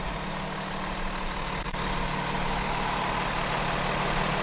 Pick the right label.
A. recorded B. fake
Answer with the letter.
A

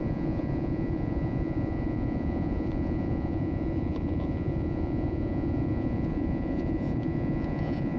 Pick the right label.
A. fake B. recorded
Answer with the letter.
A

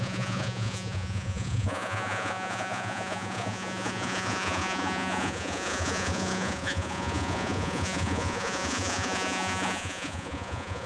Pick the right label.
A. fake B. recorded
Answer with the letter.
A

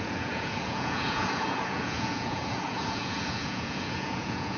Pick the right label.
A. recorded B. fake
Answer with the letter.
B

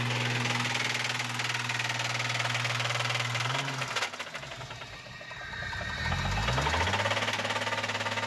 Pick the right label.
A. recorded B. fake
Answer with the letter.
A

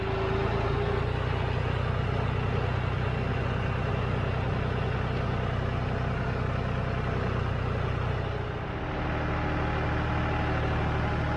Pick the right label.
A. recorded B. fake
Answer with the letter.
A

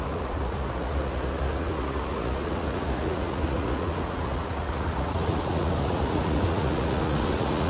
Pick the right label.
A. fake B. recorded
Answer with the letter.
A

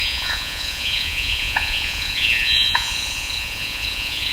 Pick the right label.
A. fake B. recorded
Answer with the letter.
A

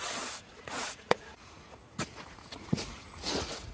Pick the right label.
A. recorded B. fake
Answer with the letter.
B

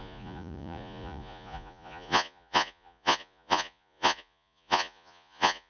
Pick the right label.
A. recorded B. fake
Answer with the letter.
B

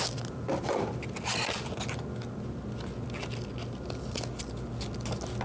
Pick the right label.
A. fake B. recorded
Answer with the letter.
B